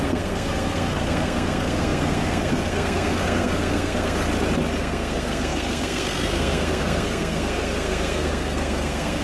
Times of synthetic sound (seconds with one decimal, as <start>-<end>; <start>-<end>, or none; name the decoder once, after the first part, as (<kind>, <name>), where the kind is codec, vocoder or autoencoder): 0.0-4.2 (codec, SNAC); 4.8-9.2